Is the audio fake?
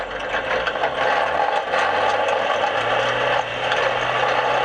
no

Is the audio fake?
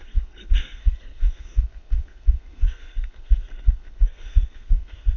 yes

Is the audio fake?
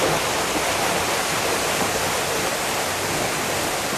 no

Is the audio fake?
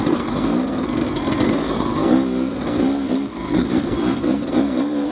yes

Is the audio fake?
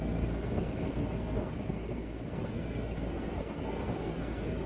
yes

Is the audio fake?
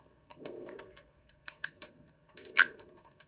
yes